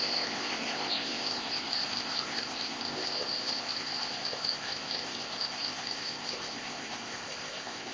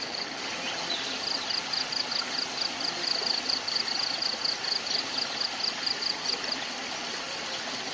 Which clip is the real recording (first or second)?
second